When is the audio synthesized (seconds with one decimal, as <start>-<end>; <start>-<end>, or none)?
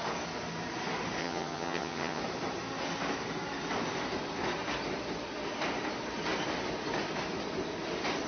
1.2-2.2